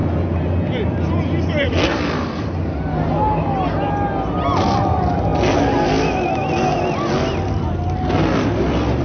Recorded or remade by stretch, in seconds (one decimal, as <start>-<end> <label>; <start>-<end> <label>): 0.0-9.0 recorded